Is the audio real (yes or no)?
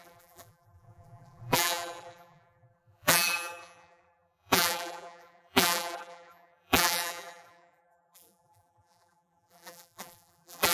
no